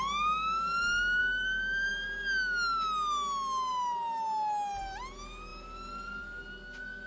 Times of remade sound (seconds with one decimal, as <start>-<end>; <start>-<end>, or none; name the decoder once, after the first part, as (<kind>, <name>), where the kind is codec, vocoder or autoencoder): none

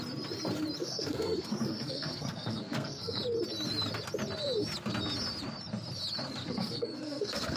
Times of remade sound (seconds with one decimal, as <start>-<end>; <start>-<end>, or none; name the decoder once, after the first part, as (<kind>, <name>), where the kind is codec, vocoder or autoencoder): 0.8-3.2 (codec, SNAC); 6.4-7.6